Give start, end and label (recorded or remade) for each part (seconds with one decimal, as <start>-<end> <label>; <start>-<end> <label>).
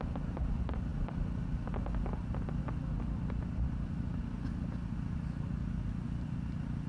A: 0.0-6.9 recorded